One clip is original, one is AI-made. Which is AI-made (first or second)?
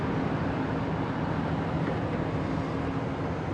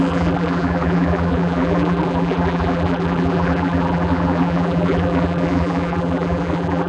second